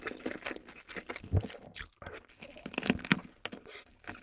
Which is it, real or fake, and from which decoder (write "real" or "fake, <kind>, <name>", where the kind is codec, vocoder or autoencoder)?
real